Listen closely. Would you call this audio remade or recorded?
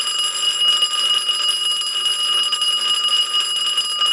recorded